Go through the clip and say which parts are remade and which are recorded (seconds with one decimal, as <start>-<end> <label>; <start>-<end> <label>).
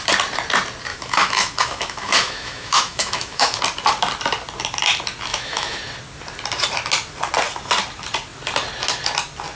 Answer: 0.0-0.9 recorded; 0.9-3.6 remade; 3.6-5.3 recorded; 5.3-5.8 remade; 5.8-9.6 recorded